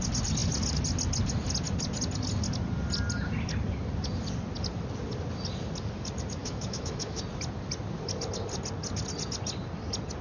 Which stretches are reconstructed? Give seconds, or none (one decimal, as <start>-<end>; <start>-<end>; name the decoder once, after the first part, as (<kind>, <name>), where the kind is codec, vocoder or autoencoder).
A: 6.4-7.2 (autoencoder, DAC-VAE)